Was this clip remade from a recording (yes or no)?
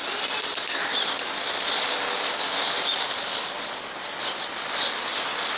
no